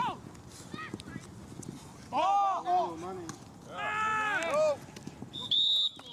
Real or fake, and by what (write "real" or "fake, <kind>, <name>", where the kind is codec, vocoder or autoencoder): real